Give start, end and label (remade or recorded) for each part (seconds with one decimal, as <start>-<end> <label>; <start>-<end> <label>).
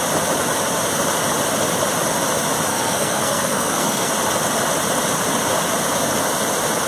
0.0-2.7 recorded; 2.7-4.1 remade; 4.1-6.9 recorded